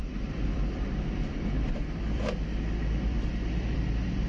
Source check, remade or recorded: remade